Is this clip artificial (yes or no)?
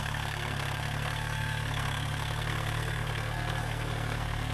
yes